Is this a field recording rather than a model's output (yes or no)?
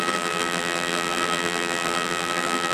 no